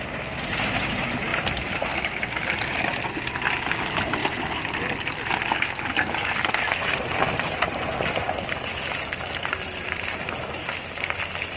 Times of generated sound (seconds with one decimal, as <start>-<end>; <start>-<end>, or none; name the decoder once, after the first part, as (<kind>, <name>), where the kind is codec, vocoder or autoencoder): 1.3-3.2 (vocoder, BigVGAN v2); 4.2-6.1